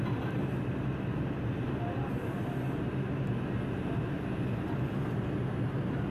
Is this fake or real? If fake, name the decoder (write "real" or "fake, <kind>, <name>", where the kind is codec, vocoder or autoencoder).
real